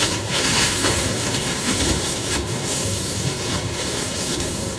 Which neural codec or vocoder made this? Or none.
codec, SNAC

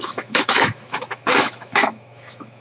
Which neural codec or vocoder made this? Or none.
autoencoder, DAC-VAE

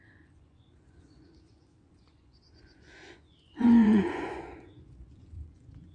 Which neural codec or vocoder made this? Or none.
vocoder, Vocos